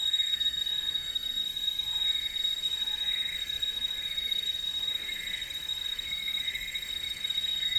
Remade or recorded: remade